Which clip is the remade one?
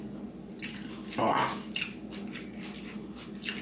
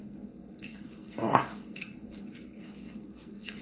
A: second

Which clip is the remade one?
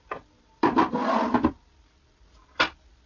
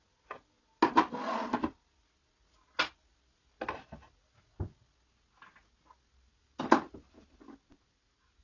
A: first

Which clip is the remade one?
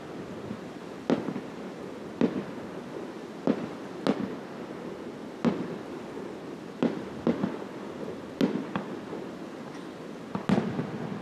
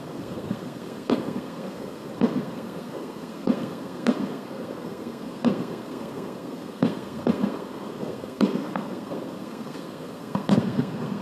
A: second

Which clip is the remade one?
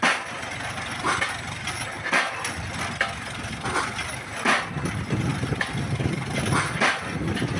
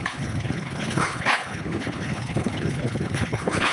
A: second